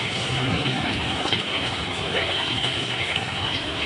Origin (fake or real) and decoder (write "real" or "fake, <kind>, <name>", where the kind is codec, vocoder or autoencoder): fake, codec, SNAC